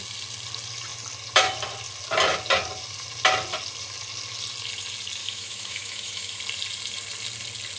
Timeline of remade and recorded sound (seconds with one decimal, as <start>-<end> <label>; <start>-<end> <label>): 0.0-5.2 recorded; 5.2-6.4 remade; 6.4-7.8 recorded